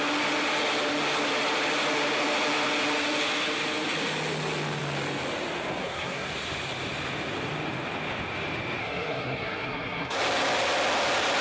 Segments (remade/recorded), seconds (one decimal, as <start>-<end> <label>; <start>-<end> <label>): 0.0-5.8 recorded; 5.8-6.3 remade; 6.3-8.8 recorded; 8.8-10.2 remade; 10.2-11.4 recorded